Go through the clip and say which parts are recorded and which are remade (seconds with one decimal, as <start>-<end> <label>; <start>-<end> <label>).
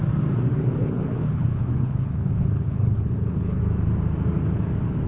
0.0-0.5 recorded; 0.5-3.6 remade; 3.6-5.1 recorded